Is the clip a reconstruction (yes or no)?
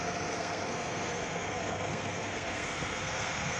yes